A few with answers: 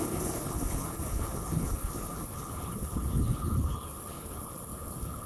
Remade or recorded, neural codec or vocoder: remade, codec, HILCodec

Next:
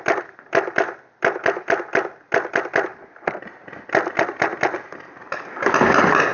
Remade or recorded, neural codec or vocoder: recorded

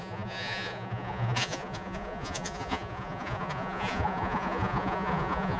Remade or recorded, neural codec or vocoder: remade, vocoder, Vocos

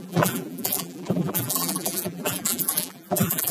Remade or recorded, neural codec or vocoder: remade, vocoder, BigVGAN v2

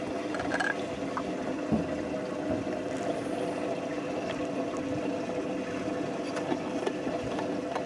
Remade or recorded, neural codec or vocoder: recorded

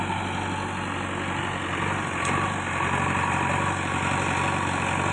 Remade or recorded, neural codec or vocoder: recorded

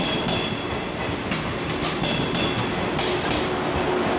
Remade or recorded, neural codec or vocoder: recorded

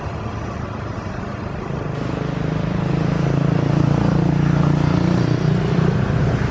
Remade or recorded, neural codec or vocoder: recorded